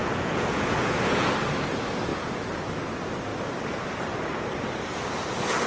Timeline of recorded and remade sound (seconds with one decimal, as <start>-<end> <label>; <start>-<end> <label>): 0.0-1.3 remade; 1.3-2.1 recorded; 2.1-2.6 remade; 2.6-5.7 recorded